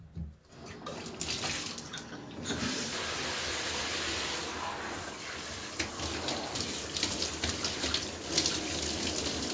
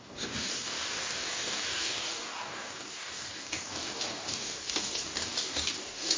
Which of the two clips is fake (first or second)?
second